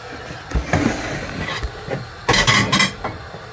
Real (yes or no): yes